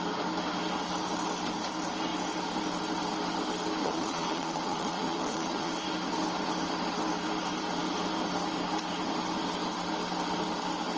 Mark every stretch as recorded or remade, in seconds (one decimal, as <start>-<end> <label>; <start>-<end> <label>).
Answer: 0.0-3.8 recorded; 3.8-5.7 remade; 5.7-11.0 recorded